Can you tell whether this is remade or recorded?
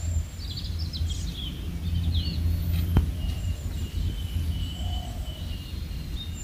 recorded